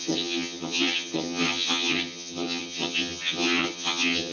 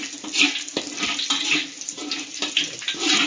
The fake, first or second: first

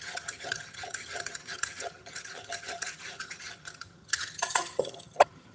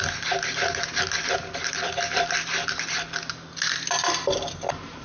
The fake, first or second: first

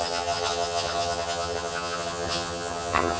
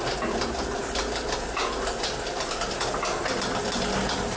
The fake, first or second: first